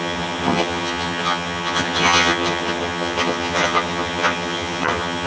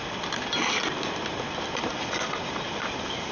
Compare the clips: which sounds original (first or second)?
second